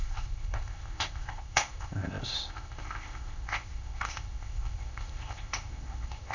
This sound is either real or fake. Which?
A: fake